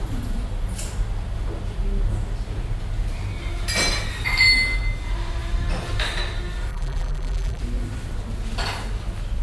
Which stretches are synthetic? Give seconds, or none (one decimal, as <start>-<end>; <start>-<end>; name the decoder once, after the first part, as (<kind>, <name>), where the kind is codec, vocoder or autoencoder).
6.7-7.6 (vocoder, BigVGAN v2)